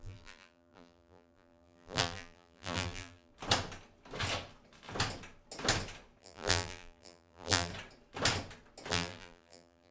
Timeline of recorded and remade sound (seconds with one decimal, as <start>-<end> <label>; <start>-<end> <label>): 0.0-3.3 remade; 3.3-6.2 recorded; 6.2-7.7 remade; 7.7-8.9 recorded; 8.9-9.9 remade